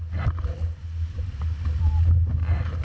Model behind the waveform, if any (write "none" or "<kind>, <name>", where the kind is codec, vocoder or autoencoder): none